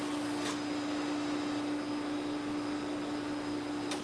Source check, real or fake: real